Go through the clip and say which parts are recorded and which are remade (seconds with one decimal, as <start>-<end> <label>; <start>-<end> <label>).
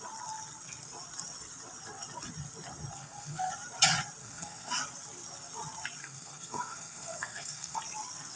0.0-3.0 recorded; 3.0-3.5 remade; 3.5-4.2 recorded; 4.2-4.7 remade; 4.7-6.0 recorded; 6.0-7.8 remade; 7.8-8.4 recorded